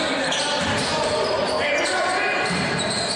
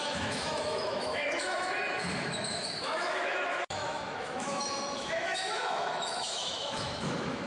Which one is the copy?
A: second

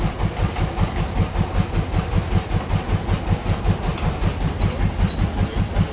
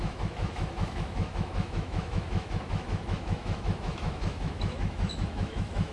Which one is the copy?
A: second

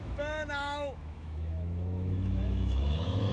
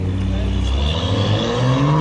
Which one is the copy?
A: first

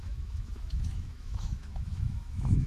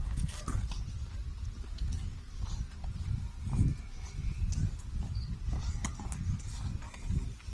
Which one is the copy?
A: first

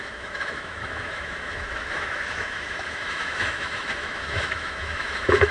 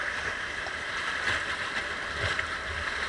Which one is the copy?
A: first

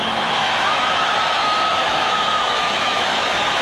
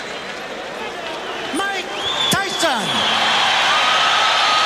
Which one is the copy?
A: first